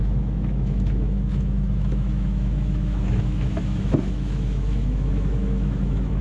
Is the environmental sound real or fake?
fake